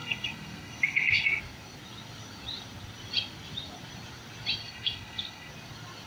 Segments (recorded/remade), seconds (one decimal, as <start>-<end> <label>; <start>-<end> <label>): 0.0-1.4 remade; 1.4-4.6 recorded; 4.6-5.5 remade; 5.5-6.1 recorded